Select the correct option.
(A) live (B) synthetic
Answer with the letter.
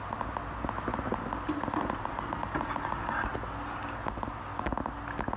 A